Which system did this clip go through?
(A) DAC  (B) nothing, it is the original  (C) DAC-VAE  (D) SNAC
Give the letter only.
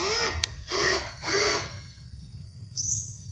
D